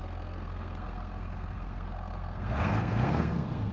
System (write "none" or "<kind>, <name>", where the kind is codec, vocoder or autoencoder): codec, SNAC